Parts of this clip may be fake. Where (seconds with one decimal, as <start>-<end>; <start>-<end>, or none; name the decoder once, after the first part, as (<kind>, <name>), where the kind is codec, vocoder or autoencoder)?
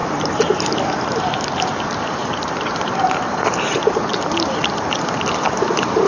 0.0-1.6 (vocoder, BigVGAN v2); 2.2-4.1